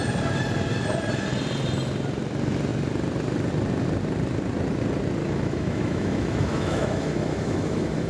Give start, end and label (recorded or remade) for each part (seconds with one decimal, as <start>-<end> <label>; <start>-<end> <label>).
0.0-5.2 recorded; 5.2-8.1 remade